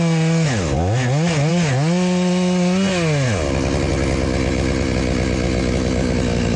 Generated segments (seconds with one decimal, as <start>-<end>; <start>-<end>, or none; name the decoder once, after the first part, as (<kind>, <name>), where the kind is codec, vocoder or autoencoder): none